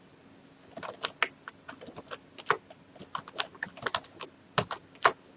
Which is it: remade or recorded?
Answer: recorded